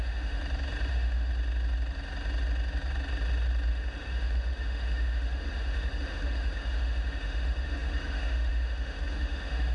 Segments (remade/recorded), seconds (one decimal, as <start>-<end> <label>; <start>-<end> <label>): 0.0-0.4 remade; 0.4-0.9 recorded; 0.9-1.3 remade; 1.3-3.7 recorded; 3.7-9.7 remade